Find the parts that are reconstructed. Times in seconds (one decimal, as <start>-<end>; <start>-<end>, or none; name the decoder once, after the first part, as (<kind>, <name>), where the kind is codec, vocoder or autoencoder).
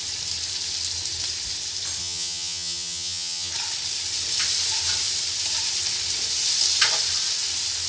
2.0-3.5 (vocoder, HiFi-GAN)